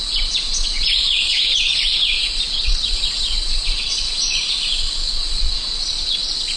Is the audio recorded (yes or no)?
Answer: no